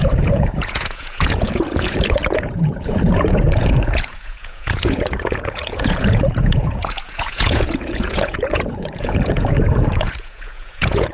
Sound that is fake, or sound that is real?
fake